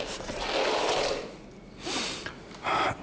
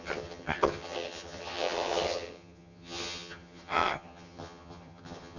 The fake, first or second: second